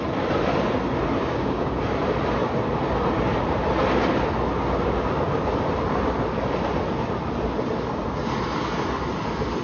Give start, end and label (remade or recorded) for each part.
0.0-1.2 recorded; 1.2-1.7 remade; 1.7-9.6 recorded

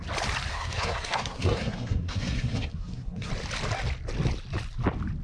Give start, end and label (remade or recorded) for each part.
0.0-0.5 recorded; 0.5-3.3 remade; 3.3-5.2 recorded